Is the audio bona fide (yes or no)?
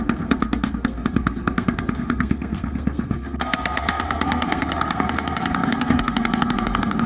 no